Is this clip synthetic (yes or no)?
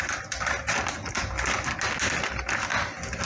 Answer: no